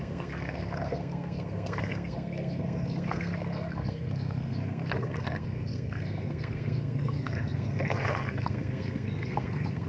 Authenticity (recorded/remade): remade